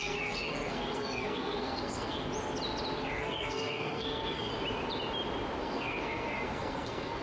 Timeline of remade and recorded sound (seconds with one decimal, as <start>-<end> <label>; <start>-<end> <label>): 0.0-2.3 remade; 2.3-3.0 recorded; 3.0-4.5 remade; 4.5-5.6 recorded; 5.6-7.2 remade